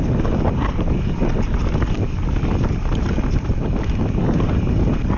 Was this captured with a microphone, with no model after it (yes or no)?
yes